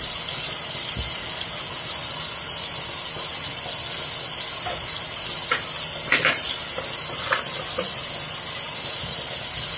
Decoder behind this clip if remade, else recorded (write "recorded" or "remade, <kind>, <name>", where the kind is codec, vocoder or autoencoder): recorded